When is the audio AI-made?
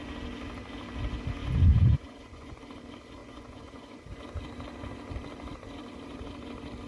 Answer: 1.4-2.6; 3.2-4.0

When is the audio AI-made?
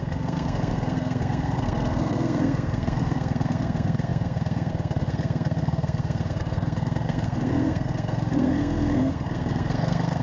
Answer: 0.0-10.2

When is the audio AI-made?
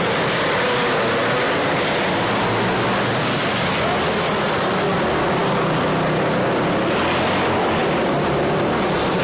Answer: none